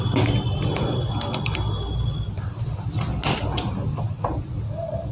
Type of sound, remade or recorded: recorded